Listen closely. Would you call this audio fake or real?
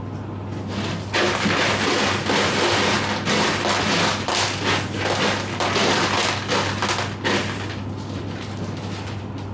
real